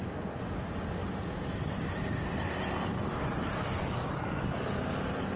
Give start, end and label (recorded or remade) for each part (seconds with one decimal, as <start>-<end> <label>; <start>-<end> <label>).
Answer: 0.0-1.0 recorded; 1.0-4.2 remade; 4.2-5.4 recorded